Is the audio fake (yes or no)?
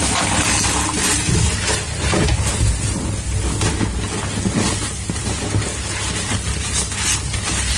no